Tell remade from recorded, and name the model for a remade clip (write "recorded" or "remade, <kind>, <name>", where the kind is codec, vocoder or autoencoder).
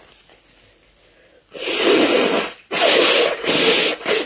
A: recorded